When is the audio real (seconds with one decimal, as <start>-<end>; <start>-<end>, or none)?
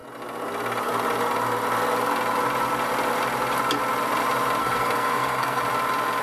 0.0-4.6; 5.6-6.2